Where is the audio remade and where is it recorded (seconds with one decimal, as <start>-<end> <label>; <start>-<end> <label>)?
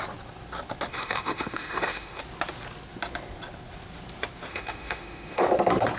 0.0-0.9 recorded; 0.9-2.2 remade; 2.2-4.5 recorded; 4.5-5.4 remade; 5.4-6.0 recorded